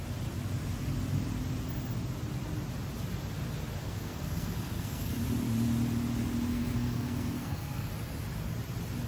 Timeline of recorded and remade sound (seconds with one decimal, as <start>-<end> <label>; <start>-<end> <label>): 0.0-3.8 recorded; 3.8-5.2 remade; 5.2-6.5 recorded; 6.5-7.9 remade; 7.9-9.1 recorded